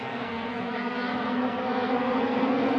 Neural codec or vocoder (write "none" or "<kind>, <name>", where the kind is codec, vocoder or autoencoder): codec, SNAC